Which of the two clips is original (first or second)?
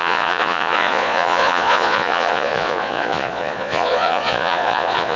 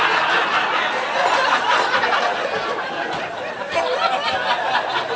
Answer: second